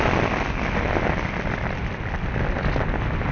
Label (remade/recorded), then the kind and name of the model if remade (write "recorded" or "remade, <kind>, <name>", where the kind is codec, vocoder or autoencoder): recorded